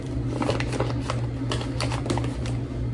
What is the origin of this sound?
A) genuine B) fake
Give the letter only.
A